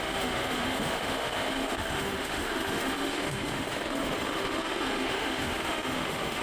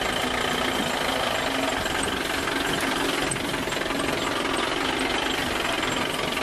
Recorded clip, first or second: second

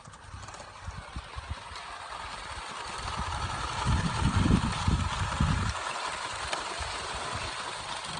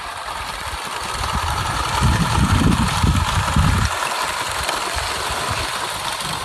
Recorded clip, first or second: first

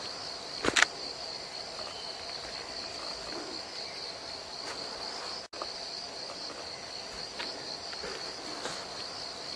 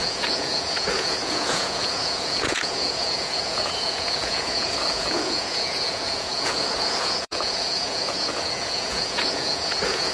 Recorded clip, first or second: first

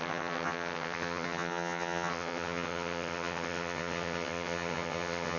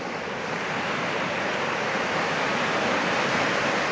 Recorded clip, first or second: second